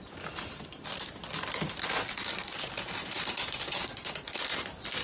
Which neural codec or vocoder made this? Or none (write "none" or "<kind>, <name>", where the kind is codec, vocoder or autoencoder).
none